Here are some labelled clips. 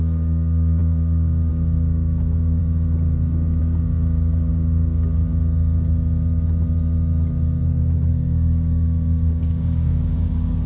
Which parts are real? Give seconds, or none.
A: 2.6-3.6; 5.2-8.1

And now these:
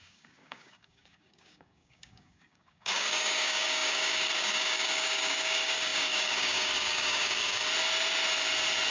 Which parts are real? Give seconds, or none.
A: 7.6-8.9